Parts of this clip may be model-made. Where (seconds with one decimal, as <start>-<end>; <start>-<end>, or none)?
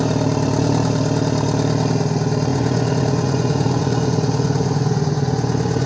2.5-5.9